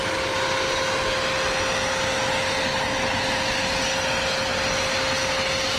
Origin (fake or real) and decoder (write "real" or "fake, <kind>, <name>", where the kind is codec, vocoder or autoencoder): real